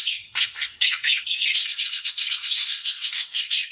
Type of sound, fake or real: fake